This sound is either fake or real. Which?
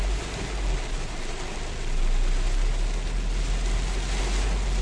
real